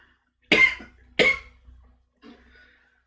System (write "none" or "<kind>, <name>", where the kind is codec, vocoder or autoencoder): none